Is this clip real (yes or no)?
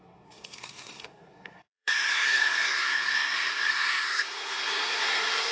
no